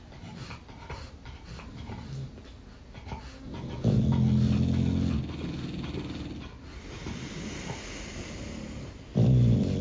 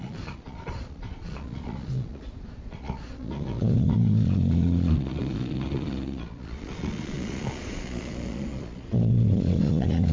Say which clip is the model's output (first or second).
second